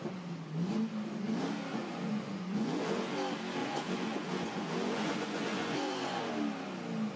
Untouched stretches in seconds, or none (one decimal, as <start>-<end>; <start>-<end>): 0.0-1.7; 3.0-3.6; 6.3-7.2